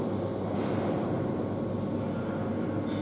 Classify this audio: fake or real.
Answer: real